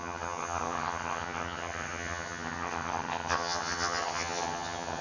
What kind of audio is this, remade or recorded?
remade